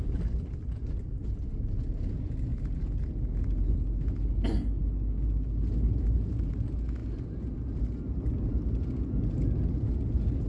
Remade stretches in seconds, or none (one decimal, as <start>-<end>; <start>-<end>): 2.5-3.0